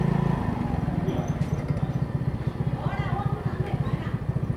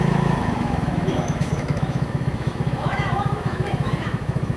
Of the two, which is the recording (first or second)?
first